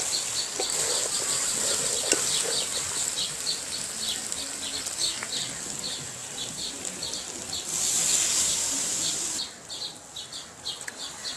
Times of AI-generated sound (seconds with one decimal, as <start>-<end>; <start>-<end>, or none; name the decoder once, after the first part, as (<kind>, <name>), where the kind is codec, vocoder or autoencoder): 6.2-6.7 (vocoder, BigVGAN v2)